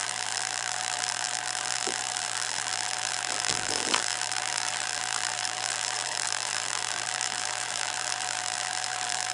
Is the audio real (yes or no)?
no